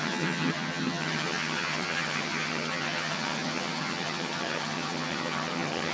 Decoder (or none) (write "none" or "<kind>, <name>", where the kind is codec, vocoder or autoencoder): vocoder, HiFi-GAN